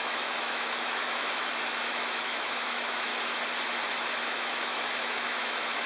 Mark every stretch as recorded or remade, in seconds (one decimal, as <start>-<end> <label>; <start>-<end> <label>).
0.0-3.1 remade; 3.1-4.0 recorded; 4.0-5.9 remade